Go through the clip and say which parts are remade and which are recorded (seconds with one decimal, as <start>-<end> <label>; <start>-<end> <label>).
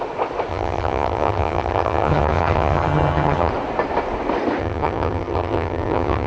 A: 0.0-0.5 recorded; 0.5-3.5 remade; 3.5-4.6 recorded; 4.6-6.3 remade